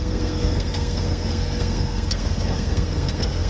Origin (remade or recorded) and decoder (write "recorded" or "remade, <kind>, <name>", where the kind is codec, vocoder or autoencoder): remade, codec, SNAC